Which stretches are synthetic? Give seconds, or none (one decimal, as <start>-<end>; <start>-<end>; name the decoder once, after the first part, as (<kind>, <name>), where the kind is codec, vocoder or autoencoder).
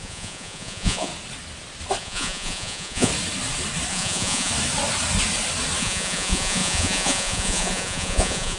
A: 0.0-1.1 (vocoder, Vocos); 2.0-3.1; 3.9-4.5; 5.8-8.6